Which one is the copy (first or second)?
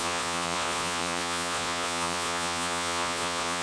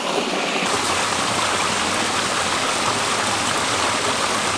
first